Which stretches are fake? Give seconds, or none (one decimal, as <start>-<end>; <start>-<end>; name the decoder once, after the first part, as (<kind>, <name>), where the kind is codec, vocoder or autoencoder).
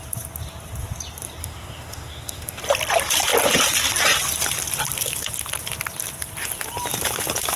1.4-2.6 (autoencoder, DAC-VAE)